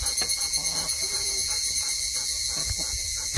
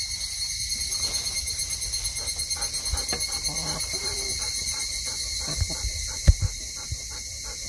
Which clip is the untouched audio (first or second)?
second